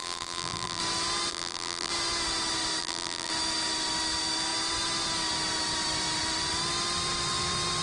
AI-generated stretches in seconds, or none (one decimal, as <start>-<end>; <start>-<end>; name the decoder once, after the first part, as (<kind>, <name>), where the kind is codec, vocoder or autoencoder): 0.0-0.8 (vocoder, BigVGAN v2); 1.3-1.9; 2.8-3.3